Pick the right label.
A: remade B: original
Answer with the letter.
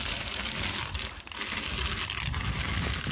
B